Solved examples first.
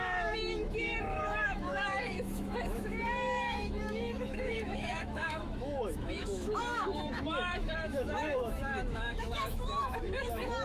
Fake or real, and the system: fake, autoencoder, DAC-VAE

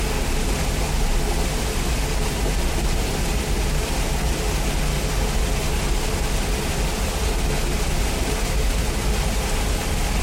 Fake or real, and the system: real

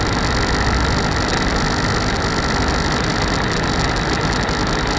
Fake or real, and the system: real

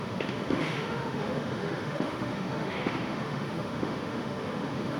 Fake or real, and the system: fake, autoencoder, DAC-VAE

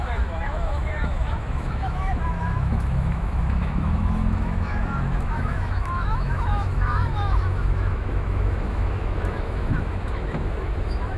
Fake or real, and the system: fake, autoencoder, DAC-VAE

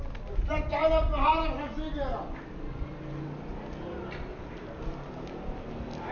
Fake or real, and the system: real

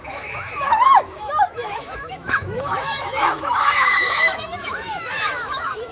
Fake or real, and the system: fake, autoencoder, DAC-VAE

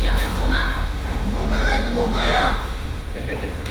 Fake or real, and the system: fake, autoencoder, DAC-VAE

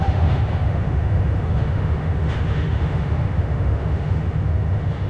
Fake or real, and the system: fake, autoencoder, DAC-VAE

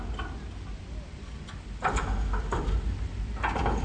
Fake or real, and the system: real